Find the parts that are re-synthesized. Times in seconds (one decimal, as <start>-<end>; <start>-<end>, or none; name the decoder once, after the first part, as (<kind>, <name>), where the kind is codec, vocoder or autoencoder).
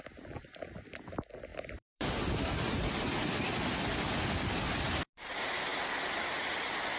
1.5-2.1 (vocoder, BigVGAN v2); 5.7-6.6